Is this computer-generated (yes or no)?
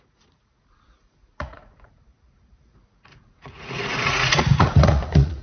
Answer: yes